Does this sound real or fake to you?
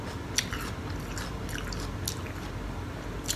real